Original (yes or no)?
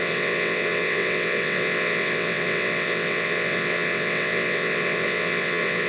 no